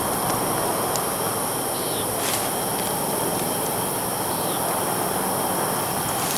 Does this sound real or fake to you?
real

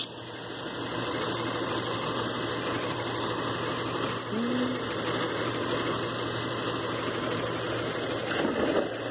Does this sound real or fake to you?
real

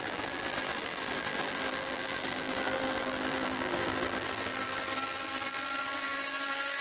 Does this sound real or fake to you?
fake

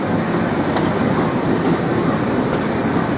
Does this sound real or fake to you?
real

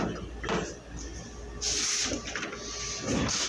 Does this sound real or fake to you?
real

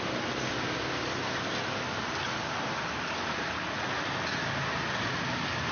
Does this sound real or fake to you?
real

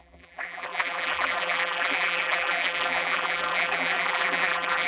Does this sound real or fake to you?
fake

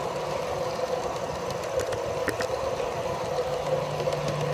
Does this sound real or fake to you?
real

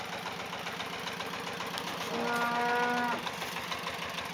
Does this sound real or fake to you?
real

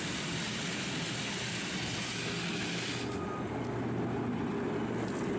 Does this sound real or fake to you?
real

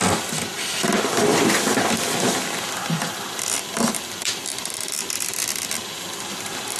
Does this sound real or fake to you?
fake